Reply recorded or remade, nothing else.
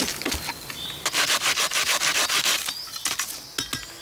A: recorded